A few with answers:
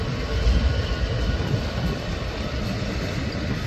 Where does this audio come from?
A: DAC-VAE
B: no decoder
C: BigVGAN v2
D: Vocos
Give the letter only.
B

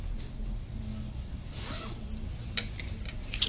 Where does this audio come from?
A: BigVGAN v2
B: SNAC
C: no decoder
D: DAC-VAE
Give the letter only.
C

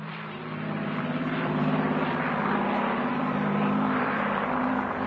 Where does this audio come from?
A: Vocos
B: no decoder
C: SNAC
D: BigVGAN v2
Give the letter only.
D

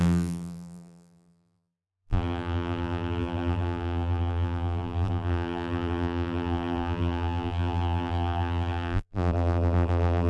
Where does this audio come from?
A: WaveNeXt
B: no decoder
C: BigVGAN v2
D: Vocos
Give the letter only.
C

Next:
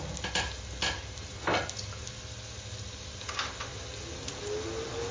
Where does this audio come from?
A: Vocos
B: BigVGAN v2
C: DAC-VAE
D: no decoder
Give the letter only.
D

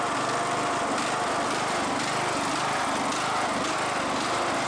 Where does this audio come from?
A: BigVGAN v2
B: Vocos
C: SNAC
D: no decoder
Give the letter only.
D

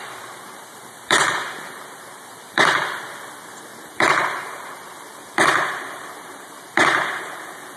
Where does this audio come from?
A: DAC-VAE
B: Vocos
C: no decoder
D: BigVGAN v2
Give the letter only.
D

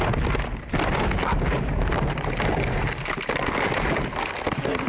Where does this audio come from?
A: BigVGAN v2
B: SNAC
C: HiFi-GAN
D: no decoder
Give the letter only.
D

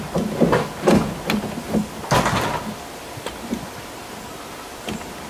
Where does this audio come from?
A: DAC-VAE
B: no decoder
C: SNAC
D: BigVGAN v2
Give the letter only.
B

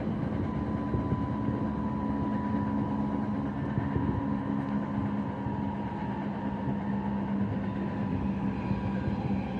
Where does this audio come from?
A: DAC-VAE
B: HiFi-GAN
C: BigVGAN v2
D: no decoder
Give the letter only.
D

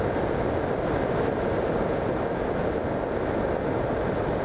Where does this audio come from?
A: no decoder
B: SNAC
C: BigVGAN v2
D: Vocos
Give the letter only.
A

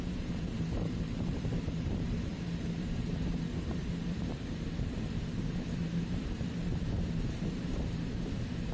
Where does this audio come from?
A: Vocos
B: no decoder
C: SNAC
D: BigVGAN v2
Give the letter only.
D